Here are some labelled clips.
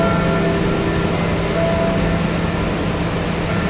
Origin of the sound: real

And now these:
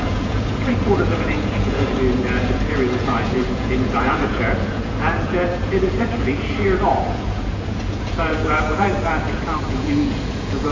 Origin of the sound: fake